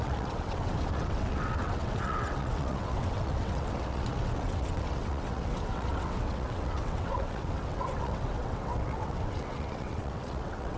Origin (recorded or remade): remade